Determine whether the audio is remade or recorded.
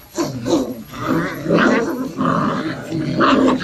recorded